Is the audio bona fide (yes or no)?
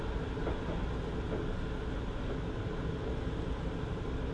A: yes